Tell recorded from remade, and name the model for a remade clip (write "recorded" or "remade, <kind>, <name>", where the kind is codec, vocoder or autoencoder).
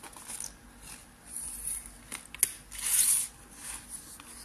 recorded